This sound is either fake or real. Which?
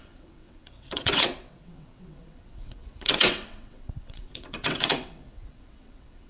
fake